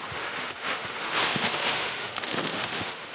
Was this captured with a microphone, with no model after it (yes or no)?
no